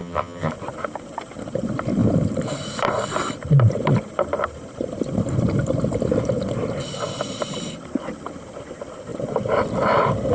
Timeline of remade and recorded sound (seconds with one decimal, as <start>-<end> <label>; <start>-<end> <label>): 0.0-0.5 remade; 0.5-10.3 recorded